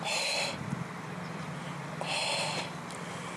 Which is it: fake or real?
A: real